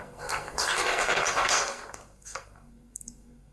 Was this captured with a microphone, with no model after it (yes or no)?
no